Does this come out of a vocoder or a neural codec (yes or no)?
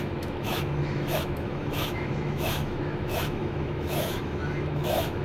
yes